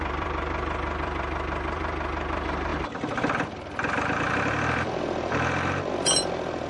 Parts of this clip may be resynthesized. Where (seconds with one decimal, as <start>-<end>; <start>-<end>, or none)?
0.0-6.7